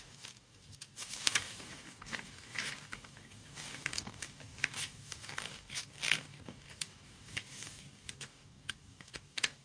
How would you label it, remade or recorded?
remade